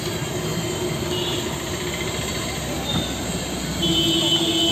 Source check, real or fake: real